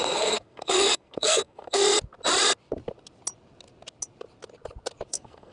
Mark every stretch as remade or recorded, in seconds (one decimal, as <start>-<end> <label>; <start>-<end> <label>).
0.0-1.8 remade; 1.8-5.1 recorded; 5.1-5.5 remade